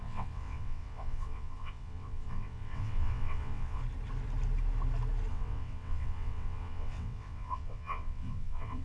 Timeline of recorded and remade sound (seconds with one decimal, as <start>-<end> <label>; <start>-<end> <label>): 0.0-3.8 remade; 3.8-5.3 recorded; 5.3-8.8 remade